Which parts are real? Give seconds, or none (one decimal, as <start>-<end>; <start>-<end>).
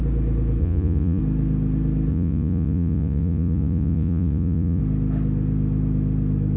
0.0-0.6; 1.2-2.1; 4.8-6.6